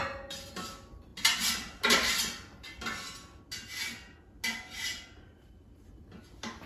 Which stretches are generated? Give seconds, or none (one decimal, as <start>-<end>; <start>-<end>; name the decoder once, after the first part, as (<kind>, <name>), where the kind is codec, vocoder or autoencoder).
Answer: none